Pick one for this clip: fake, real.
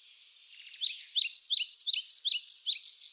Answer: real